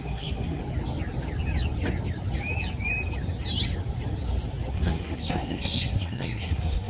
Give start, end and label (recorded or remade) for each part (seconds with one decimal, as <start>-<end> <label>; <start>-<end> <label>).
0.0-0.6 remade; 0.6-4.7 recorded; 4.7-6.9 remade